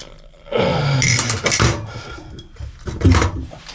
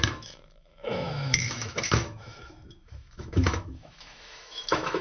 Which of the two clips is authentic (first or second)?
first